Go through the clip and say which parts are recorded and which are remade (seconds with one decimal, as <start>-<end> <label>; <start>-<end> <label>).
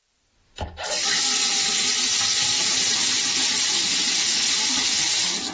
0.0-5.5 recorded